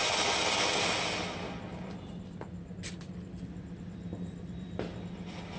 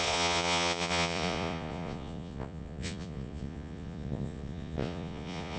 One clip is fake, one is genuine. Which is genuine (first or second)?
first